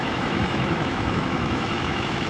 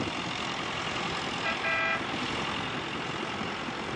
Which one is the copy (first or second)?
first